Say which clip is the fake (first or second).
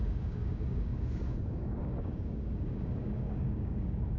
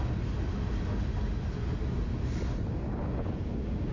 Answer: first